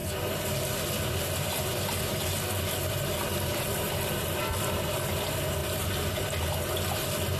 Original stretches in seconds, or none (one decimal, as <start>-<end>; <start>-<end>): 0.0-5.6; 6.2-7.4